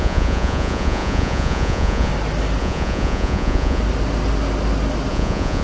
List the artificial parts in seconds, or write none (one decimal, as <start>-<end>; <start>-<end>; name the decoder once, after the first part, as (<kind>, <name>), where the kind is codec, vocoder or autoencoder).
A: 0.0-2.1 (vocoder, Vocos); 2.6-3.8; 5.1-5.6